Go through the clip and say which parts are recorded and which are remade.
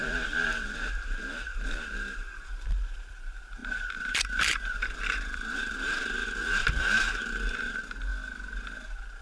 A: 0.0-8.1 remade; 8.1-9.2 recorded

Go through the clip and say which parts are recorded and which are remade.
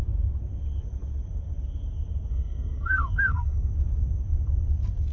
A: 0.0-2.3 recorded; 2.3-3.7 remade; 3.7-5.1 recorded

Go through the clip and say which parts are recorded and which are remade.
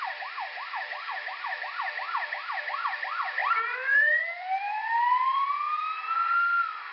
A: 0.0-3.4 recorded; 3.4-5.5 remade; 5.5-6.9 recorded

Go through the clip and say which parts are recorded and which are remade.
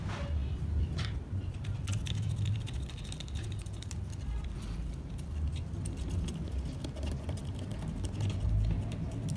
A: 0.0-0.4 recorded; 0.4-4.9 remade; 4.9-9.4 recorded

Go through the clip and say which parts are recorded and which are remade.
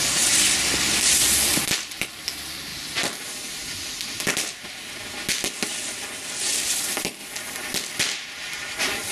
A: 0.0-1.5 recorded; 1.5-2.1 remade; 2.1-9.1 recorded